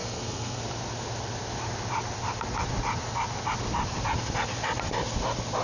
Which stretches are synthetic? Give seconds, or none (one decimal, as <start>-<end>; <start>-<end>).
0.0-0.6